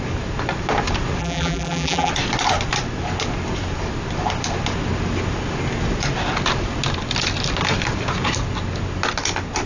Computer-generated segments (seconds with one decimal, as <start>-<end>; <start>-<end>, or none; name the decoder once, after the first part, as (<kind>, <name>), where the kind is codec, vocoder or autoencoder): 1.2-2.1 (vocoder, BigVGAN v2)